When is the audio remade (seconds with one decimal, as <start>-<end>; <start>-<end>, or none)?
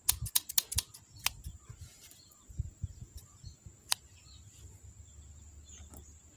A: 1.5-3.2